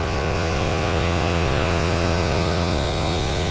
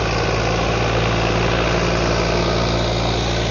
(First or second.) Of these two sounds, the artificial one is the first